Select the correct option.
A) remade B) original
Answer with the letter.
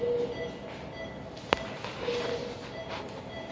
B